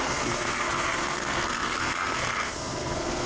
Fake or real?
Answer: fake